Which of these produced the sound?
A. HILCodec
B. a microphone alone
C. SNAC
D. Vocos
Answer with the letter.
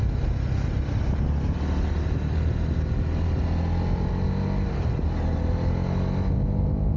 B